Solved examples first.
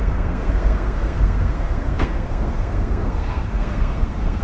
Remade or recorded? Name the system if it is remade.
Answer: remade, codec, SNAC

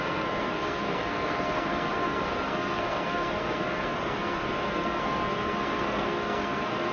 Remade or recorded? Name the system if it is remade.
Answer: remade, codec, SNAC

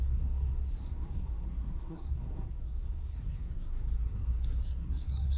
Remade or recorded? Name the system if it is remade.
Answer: remade, codec, SNAC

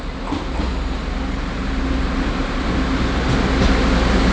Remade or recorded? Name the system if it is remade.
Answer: recorded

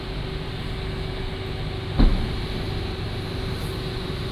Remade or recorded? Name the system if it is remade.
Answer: recorded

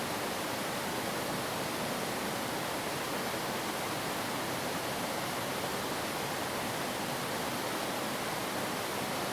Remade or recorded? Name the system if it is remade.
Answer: recorded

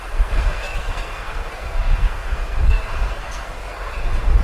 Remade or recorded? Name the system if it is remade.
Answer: remade, codec, SNAC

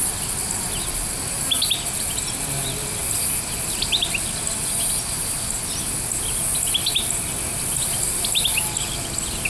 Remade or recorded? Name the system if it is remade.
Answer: recorded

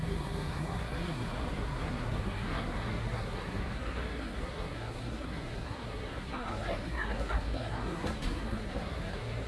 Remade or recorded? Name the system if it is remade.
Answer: remade, codec, SNAC